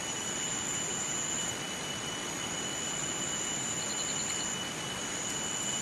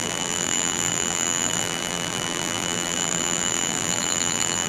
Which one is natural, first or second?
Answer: first